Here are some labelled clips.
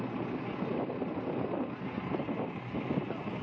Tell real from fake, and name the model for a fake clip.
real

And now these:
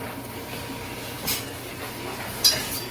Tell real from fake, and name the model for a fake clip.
real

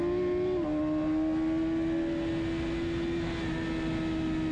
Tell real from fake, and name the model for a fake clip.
real